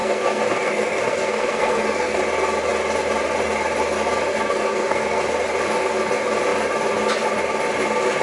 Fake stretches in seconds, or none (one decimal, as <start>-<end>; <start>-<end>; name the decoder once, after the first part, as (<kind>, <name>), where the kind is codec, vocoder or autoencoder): 0.0-2.2 (codec, SNAC); 4.3-5.2